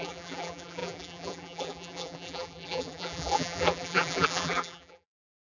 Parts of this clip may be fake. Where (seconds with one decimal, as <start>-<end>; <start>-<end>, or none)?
0.0-5.4